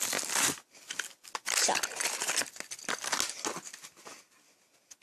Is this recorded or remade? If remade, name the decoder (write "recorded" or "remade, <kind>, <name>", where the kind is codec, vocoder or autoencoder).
recorded